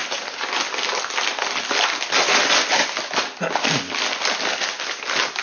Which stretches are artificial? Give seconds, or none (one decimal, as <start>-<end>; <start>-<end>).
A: none